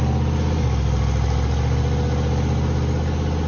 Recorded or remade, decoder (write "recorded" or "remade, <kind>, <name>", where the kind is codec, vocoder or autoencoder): recorded